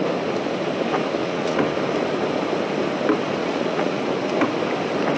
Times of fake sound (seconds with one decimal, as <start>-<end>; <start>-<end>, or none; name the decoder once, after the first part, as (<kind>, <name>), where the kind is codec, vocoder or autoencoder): 1.2-1.7 (vocoder, Vocos); 3.4-4.1